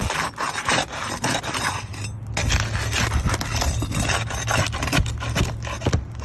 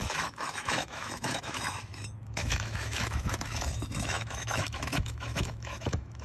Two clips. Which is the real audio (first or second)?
first